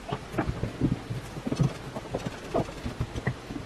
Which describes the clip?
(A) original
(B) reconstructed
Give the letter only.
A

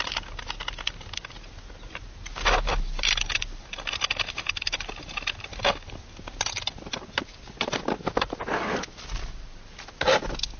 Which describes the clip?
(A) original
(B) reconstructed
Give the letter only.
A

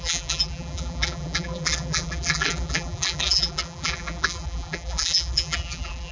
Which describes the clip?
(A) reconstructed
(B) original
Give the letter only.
A